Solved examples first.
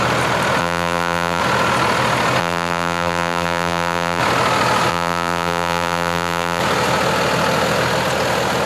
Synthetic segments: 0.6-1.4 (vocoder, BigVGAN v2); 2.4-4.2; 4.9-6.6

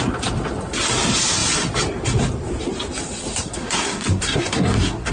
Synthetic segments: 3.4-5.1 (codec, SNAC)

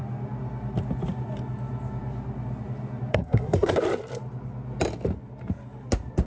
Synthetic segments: 3.1-3.8 (codec, SNAC)

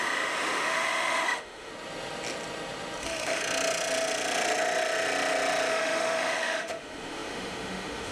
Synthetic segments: 0.0-1.7 (autoencoder, DAC-VAE); 3.0-3.4; 5.7-8.1

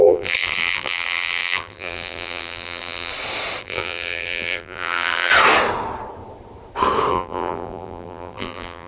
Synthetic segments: 0.0-3.1 (vocoder, BigVGAN v2); 3.6-5.3; 7.1-8.9